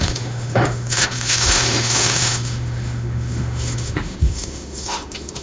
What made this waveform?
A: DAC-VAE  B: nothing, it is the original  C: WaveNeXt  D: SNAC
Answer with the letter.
A